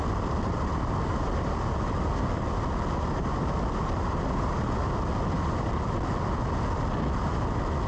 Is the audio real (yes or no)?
yes